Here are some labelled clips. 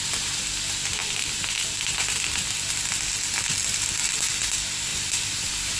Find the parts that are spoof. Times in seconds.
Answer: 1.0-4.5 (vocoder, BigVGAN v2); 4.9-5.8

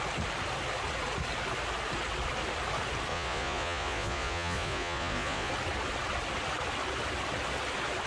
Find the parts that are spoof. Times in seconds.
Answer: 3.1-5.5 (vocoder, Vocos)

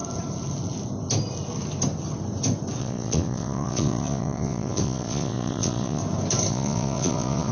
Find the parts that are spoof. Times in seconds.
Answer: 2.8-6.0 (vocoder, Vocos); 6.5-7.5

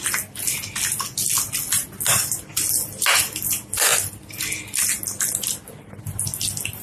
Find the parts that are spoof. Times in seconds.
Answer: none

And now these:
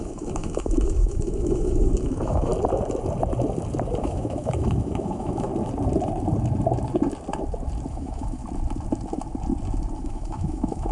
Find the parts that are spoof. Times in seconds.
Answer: 0.0-2.5 (autoencoder, DAC-VAE); 4.0-5.5; 7.9-8.4; 10.0-10.9

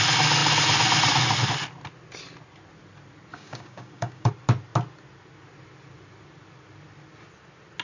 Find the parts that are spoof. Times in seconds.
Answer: 3.3-4.3 (codec, DAC)

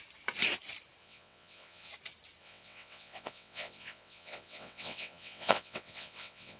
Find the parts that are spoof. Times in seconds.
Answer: 1.0-1.9 (vocoder, WaveNeXt); 2.4-6.6